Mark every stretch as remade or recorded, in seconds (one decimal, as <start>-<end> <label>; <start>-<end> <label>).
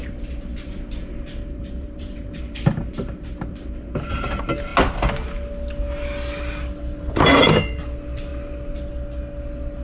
0.0-4.1 remade; 4.1-9.8 recorded